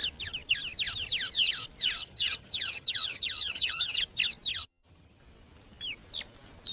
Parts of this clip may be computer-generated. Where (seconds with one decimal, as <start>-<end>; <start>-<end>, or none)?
2.0-4.0; 4.5-5.2